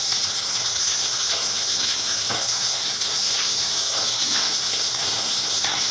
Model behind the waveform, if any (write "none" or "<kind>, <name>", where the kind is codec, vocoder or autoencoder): codec, SNAC